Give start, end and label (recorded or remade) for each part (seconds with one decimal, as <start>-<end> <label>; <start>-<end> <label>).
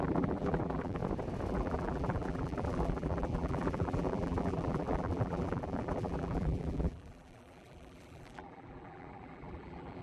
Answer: 0.0-1.0 remade; 1.0-1.5 recorded; 1.5-10.0 remade